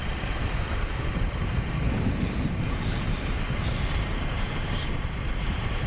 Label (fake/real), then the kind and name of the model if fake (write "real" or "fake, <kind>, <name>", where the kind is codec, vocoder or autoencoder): fake, vocoder, BigVGAN v2